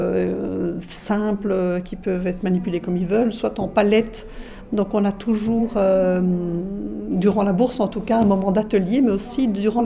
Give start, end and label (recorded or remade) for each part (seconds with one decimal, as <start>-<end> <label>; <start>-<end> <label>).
0.0-9.8 recorded